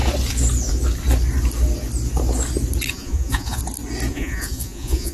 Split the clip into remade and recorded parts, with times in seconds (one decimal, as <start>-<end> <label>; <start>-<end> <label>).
0.0-2.9 recorded; 2.9-3.6 remade; 3.6-4.1 recorded; 4.1-5.1 remade